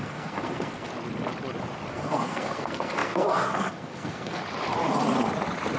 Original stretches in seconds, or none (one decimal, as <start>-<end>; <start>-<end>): 0.9-1.9; 4.4-5.8